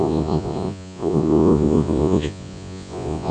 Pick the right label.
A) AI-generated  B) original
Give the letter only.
A